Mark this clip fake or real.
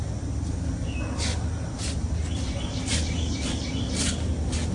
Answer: real